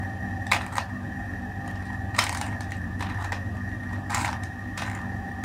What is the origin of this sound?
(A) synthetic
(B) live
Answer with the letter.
A